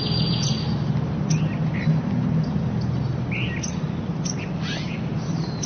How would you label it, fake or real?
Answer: real